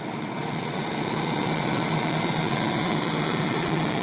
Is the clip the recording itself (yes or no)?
no